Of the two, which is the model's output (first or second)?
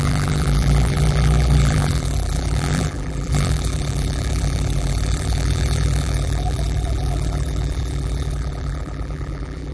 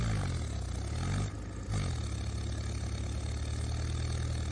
first